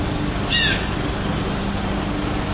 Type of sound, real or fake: real